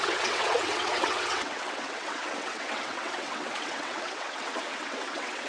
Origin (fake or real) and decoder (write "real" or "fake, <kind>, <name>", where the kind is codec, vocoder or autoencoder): fake, vocoder, WaveNeXt